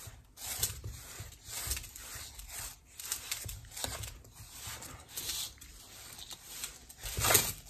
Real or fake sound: real